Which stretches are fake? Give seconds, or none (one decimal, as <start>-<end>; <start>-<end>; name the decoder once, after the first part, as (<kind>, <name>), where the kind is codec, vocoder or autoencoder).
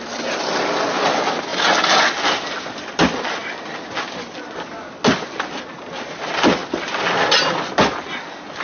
none